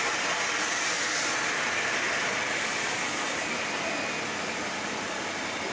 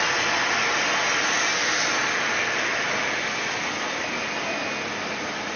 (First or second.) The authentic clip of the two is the second